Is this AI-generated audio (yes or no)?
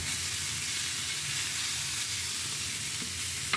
no